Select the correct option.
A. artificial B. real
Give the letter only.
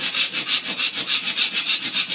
B